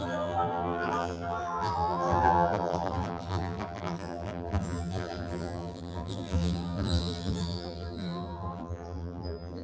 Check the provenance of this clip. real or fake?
fake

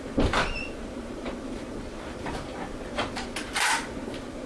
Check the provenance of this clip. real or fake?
fake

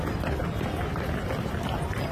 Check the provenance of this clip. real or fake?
real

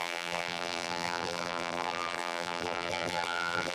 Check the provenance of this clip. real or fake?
fake